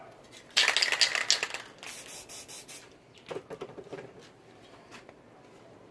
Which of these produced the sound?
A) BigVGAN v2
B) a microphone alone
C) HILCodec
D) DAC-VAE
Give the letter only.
B